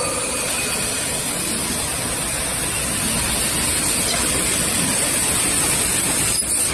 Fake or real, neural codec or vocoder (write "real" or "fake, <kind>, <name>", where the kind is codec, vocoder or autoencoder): real